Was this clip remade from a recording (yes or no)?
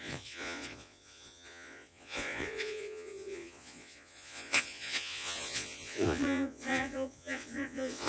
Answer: yes